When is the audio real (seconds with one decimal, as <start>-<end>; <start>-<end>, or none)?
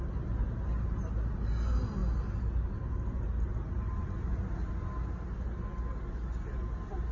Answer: 0.0-7.1